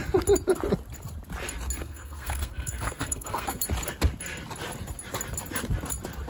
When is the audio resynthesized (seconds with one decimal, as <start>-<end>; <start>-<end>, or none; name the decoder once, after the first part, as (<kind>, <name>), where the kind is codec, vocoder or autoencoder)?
1.8-3.6 (codec, SNAC)